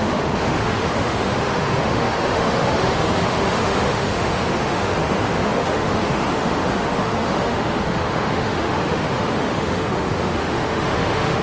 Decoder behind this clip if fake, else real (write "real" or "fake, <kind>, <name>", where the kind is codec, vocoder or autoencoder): fake, autoencoder, DAC-VAE